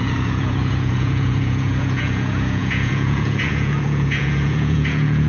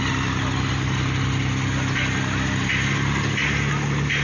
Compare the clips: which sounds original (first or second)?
second